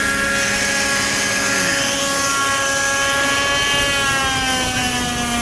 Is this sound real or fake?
real